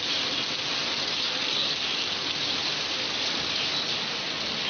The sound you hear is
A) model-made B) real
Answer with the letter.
B